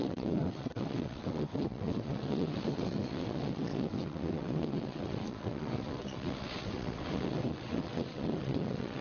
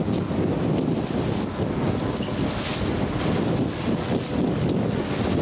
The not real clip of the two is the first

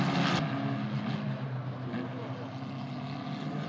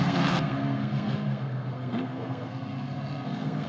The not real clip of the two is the second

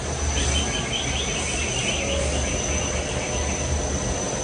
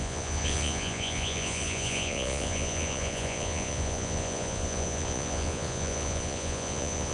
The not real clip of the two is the second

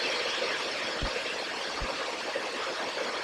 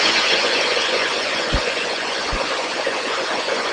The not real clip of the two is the second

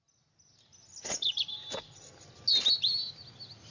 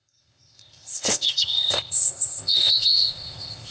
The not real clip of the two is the second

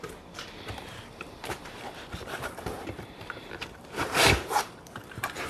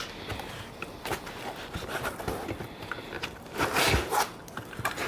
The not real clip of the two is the first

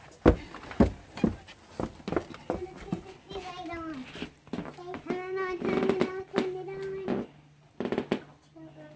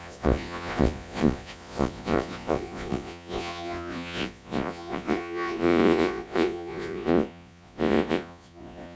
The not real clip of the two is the second